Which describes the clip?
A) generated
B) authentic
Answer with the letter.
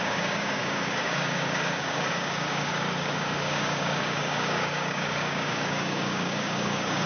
A